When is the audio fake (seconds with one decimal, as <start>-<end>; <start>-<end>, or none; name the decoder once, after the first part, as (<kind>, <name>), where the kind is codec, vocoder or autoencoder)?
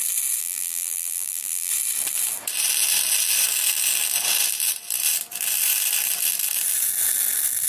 0.4-1.7 (vocoder, BigVGAN v2)